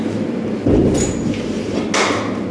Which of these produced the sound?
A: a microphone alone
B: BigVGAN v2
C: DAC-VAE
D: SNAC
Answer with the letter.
A